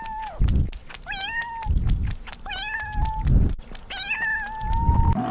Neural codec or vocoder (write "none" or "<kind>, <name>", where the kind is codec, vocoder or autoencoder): none